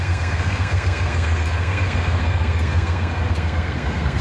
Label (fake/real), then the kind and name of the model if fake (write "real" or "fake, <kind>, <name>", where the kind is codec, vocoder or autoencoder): fake, codec, SNAC